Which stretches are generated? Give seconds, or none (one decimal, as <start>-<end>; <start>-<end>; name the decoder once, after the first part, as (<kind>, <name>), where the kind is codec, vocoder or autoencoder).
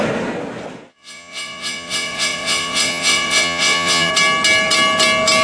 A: 0.9-4.1 (vocoder, Vocos)